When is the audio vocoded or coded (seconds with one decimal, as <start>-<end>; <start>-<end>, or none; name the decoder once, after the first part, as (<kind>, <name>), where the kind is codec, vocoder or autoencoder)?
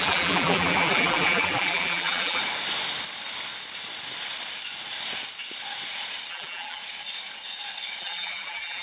0.0-2.4 (vocoder, BigVGAN v2); 6.3-6.8; 8.0-8.8